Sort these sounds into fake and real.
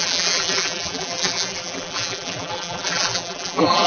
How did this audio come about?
fake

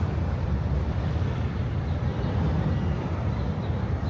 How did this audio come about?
fake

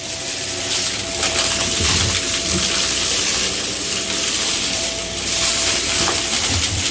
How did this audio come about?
fake